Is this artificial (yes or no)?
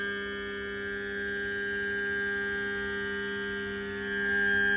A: no